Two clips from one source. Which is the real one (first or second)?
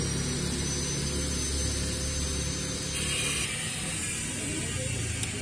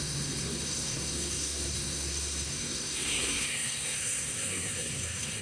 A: first